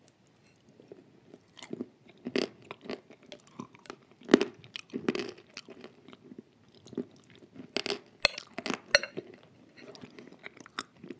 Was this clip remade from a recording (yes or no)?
no